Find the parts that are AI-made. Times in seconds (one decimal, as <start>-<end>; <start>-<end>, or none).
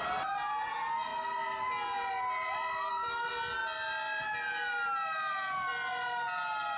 none